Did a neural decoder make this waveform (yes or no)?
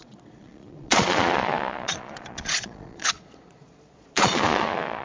yes